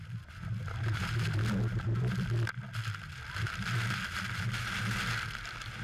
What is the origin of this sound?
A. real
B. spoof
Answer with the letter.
A